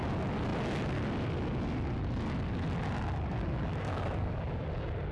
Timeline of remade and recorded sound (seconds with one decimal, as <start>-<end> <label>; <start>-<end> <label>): 0.0-3.3 recorded; 3.3-4.6 remade; 4.6-5.1 recorded